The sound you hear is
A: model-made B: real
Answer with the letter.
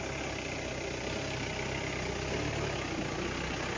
B